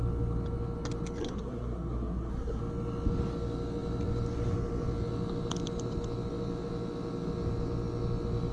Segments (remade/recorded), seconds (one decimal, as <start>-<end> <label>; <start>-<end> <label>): 0.0-1.2 recorded; 1.2-2.6 remade; 2.6-8.5 recorded